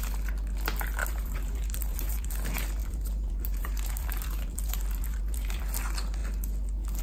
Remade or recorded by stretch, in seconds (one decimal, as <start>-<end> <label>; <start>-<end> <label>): 0.0-1.0 recorded; 1.0-2.3 remade; 2.3-2.8 recorded; 2.8-5.6 remade; 5.6-7.0 recorded